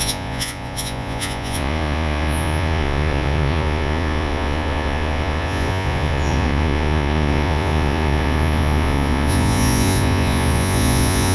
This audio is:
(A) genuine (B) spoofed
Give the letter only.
B